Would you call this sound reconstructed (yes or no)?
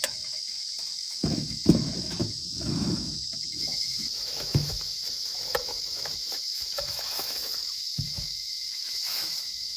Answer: yes